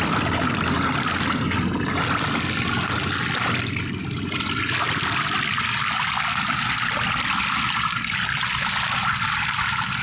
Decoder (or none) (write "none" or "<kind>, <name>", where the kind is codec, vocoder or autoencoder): none